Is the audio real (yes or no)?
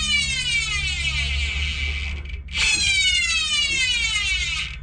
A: yes